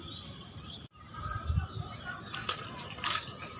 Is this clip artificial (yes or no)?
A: no